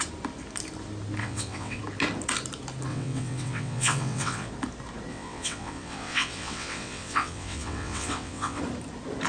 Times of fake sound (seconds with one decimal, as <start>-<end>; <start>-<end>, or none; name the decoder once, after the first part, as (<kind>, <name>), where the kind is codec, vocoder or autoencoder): 1.2-1.8 (vocoder, WaveNeXt); 2.9-4.5; 5.1-8.6